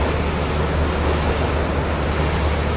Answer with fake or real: real